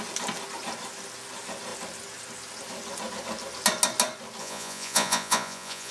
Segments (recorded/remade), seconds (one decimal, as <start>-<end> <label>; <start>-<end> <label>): 0.0-4.4 recorded; 4.4-5.9 remade